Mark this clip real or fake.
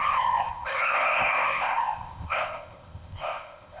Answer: fake